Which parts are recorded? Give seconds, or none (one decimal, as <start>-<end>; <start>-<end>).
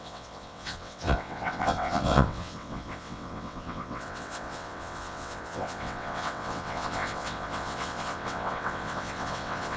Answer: none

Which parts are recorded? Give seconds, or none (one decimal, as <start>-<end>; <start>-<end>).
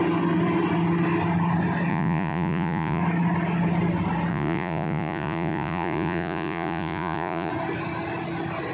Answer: 0.0-1.9; 3.0-4.3; 7.5-8.7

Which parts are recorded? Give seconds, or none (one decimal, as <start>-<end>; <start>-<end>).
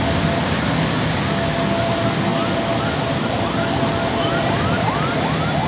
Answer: 0.0-5.7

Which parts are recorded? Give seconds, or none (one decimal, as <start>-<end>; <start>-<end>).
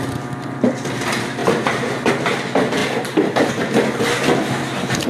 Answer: 0.0-1.4; 2.1-2.8; 3.5-5.1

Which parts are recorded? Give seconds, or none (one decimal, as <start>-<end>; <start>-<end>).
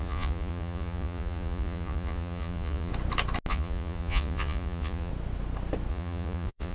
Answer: 2.9-3.5; 5.1-5.9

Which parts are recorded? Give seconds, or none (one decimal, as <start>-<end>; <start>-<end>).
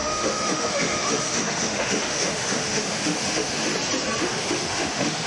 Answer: 3.7-4.2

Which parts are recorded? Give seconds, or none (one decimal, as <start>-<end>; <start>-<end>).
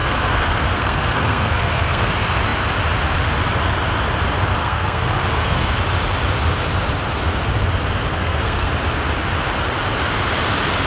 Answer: 2.1-4.6; 5.8-8.1; 8.7-10.9